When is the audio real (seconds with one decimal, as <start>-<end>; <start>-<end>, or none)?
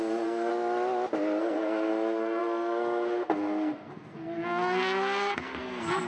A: 0.5-1.4